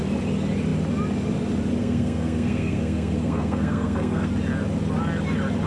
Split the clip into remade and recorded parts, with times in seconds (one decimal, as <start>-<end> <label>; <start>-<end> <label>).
0.0-1.8 recorded; 1.8-4.3 remade; 4.3-5.7 recorded